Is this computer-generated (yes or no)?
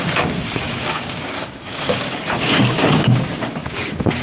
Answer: yes